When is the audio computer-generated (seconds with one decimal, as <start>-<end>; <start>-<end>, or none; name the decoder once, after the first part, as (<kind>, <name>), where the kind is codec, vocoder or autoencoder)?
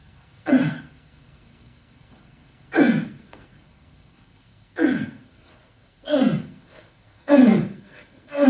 0.0-8.5 (codec, SNAC)